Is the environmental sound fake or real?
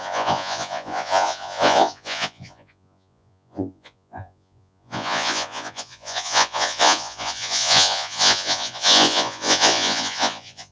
fake